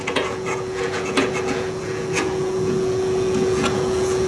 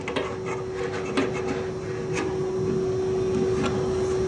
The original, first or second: second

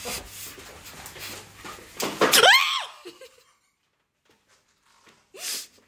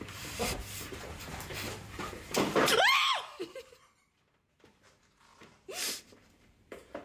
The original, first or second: first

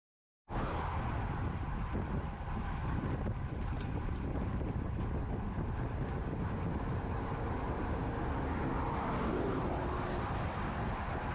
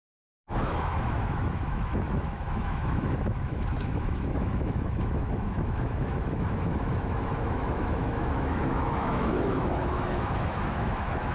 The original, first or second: first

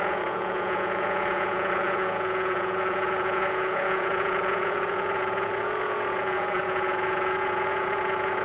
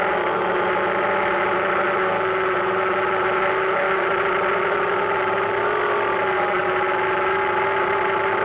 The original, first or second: second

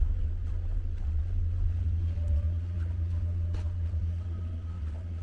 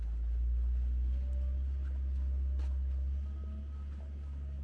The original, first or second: second